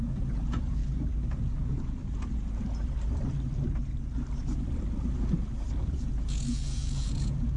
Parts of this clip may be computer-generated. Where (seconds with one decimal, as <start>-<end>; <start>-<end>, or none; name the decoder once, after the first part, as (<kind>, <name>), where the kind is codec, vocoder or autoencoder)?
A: 0.0-0.8 (vocoder, Vocos); 1.3-2.0; 5.8-7.6

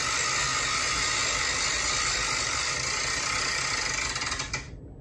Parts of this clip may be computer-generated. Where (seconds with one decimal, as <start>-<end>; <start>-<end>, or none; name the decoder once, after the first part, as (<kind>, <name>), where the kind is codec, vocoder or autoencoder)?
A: none

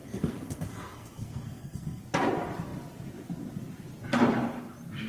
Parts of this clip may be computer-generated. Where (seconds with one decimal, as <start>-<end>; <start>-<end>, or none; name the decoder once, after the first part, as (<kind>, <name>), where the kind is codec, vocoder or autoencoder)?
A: 0.0-2.0 (codec, SNAC)